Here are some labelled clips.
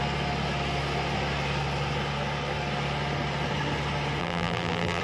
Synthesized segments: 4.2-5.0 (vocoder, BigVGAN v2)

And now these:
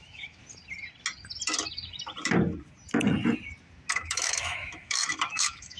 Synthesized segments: 0.0-0.4 (autoencoder, DAC-VAE); 3.9-5.8

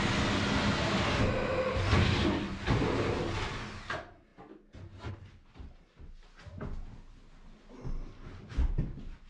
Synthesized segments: none

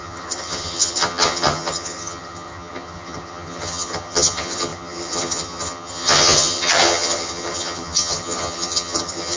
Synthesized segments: 0.0-9.4 (vocoder, HiFi-GAN)

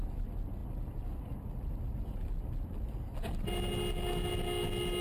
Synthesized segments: none

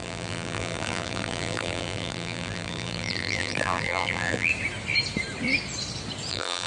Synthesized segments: 0.0-4.5 (vocoder, BigVGAN v2); 6.3-6.7

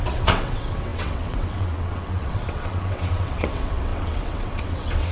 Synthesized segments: 0.0-5.1 (vocoder, WaveNeXt)

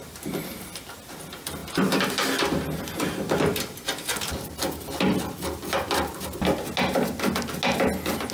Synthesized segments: none